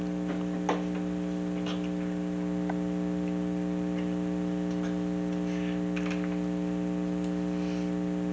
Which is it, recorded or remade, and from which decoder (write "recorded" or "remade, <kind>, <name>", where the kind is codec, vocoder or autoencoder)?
recorded